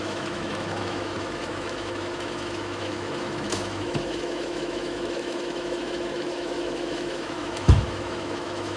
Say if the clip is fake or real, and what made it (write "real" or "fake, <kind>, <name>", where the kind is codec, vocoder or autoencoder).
fake, autoencoder, DAC-VAE